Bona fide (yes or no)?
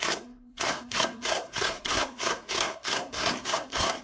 no